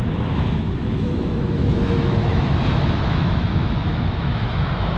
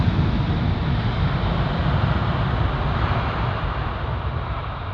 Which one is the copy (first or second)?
first